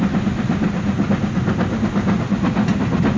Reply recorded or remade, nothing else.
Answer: recorded